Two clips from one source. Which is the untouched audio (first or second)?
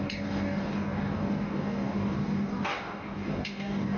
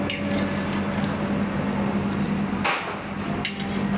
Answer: second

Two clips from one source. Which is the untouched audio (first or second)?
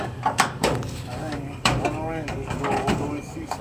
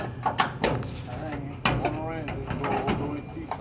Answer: second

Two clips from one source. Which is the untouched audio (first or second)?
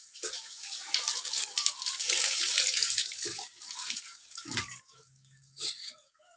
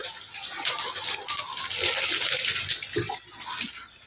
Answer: second